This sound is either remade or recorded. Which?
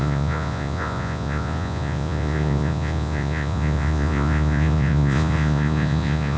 remade